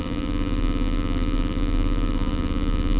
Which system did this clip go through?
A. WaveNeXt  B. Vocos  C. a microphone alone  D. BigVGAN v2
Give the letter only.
D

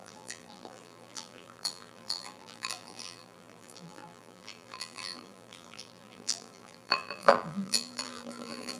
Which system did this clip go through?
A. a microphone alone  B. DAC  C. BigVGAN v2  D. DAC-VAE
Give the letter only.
C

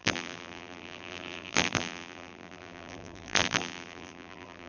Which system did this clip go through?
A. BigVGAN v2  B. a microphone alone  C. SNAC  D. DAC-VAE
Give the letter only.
A